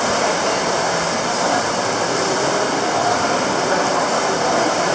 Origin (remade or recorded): recorded